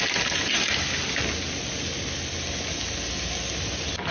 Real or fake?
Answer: real